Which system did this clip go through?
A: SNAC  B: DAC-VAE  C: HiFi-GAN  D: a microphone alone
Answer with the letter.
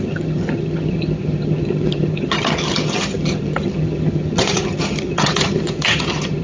C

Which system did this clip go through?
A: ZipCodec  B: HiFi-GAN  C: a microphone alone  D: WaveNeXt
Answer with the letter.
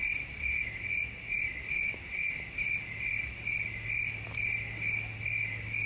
C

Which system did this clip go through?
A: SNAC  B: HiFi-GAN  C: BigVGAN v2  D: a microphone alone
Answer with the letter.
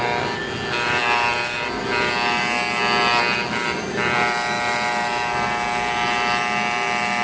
D